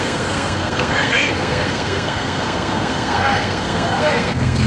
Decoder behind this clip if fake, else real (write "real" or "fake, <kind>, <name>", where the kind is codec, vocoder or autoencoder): fake, codec, SNAC